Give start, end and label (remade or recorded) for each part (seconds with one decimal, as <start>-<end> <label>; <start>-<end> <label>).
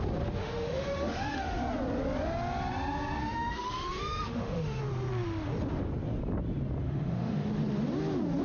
0.0-0.4 recorded; 0.4-1.6 remade; 1.6-3.2 recorded; 3.2-4.8 remade; 4.8-6.8 recorded; 6.8-7.5 remade; 7.5-8.4 recorded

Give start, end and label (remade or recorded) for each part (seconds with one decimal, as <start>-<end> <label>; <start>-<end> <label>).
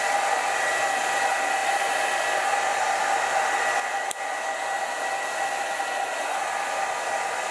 0.0-7.5 recorded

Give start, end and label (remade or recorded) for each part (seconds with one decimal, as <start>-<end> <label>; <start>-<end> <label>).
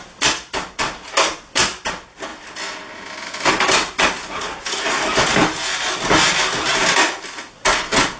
0.0-8.2 recorded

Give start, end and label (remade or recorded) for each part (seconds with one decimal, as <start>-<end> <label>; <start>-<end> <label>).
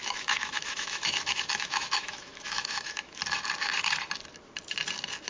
0.0-3.2 remade; 3.2-5.3 recorded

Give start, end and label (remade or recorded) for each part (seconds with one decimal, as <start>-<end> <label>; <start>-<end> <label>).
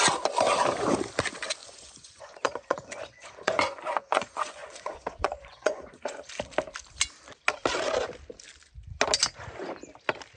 0.0-1.6 recorded; 1.6-6.3 remade; 6.3-10.4 recorded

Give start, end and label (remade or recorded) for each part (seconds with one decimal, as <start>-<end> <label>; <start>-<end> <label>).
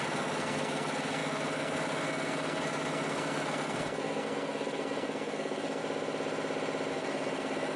0.0-5.8 remade; 5.8-6.9 recorded; 6.9-7.8 remade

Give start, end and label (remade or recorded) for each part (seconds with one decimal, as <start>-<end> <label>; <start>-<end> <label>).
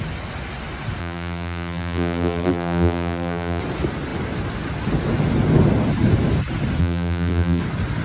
0.0-1.0 recorded; 1.0-3.6 remade; 3.6-6.8 recorded; 6.8-7.6 remade; 7.6-8.0 recorded